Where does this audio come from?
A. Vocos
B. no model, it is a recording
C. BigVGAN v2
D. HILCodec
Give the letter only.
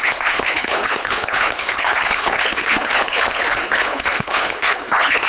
D